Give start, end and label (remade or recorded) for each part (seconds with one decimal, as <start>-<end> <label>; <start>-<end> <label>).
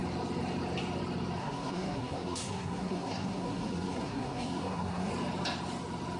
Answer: 0.0-1.4 recorded; 1.4-5.1 remade; 5.1-6.2 recorded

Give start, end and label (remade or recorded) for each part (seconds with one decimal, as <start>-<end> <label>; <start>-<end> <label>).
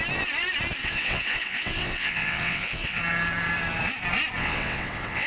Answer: 0.0-0.8 recorded; 0.8-3.0 remade; 3.0-4.4 recorded; 4.4-5.3 remade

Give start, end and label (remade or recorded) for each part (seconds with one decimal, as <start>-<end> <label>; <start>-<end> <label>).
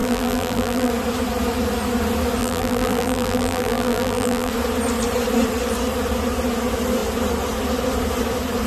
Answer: 0.0-0.9 remade; 0.9-2.4 recorded; 2.4-4.5 remade; 4.5-8.7 recorded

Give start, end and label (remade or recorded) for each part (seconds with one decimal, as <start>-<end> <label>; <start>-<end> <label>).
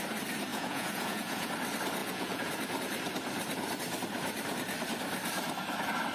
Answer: 0.0-0.5 recorded; 0.5-1.5 remade; 1.5-2.0 recorded; 2.0-2.5 remade; 2.5-6.1 recorded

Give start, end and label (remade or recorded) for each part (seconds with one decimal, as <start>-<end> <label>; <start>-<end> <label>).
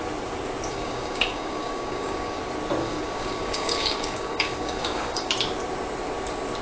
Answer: 0.0-0.7 recorded; 0.7-2.4 remade; 2.4-2.8 recorded; 2.8-5.3 remade; 5.3-6.6 recorded